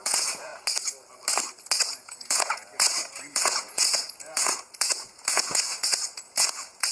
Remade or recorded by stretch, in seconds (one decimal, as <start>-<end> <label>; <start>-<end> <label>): 0.0-0.5 remade; 0.5-1.7 recorded; 1.7-6.9 remade